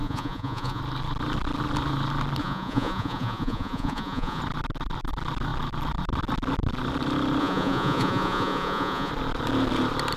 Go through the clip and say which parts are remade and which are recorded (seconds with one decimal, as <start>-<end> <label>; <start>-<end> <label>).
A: 0.0-0.8 remade; 0.8-2.4 recorded; 2.4-4.4 remade; 4.4-7.4 recorded; 7.4-9.1 remade; 9.1-10.2 recorded